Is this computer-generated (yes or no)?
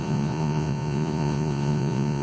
yes